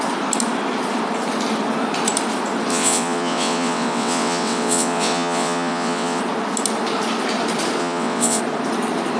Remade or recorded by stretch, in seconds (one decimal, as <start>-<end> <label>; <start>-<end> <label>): 0.0-2.7 recorded; 2.7-6.2 remade; 6.2-7.8 recorded; 7.8-8.4 remade; 8.4-9.2 recorded